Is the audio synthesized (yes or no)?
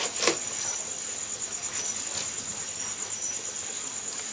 no